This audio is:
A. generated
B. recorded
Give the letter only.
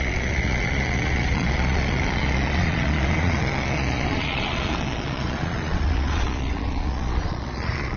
A